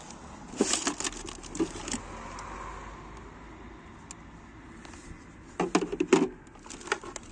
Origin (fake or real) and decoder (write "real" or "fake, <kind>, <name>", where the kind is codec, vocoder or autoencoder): real